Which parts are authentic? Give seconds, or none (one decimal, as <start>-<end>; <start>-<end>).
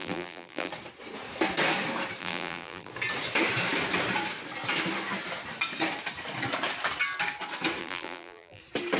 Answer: 0.7-2.2; 2.9-7.8; 8.6-9.0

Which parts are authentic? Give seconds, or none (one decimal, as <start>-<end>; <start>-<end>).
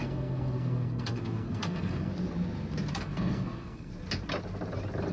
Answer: 2.1-2.9; 3.9-5.1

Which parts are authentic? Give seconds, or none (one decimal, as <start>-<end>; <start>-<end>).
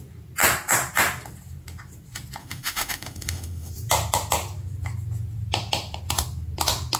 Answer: 0.0-2.4; 3.7-7.0